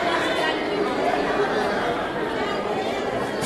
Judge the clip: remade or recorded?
remade